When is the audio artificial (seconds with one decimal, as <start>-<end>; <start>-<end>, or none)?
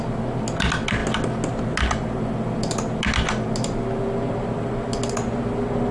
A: none